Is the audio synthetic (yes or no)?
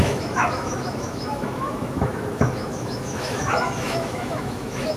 yes